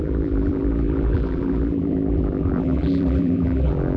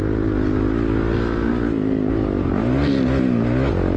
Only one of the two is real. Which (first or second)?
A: second